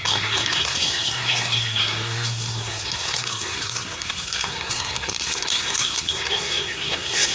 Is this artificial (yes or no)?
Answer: yes